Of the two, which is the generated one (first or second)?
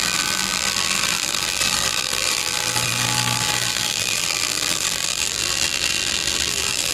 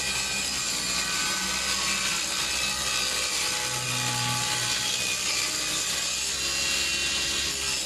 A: first